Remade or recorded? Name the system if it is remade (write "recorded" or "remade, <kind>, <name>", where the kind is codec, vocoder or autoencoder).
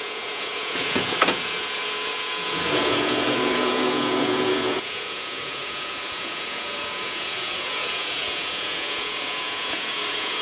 remade, vocoder, Vocos